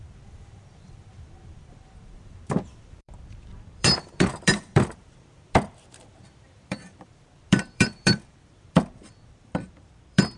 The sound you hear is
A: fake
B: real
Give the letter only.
A